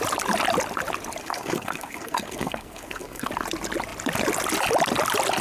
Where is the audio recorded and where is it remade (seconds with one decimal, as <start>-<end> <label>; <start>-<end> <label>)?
0.0-1.2 recorded; 1.2-3.3 remade; 3.3-5.4 recorded